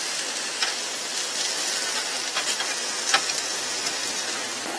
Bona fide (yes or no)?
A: yes